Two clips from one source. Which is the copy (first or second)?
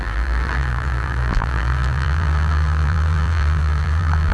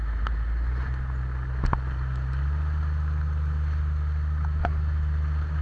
first